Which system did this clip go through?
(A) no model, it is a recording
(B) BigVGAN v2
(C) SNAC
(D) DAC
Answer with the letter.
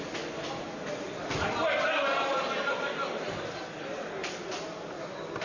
A